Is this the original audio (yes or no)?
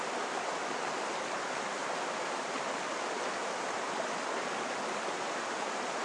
yes